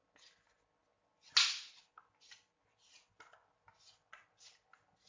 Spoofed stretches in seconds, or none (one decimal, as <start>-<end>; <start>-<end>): none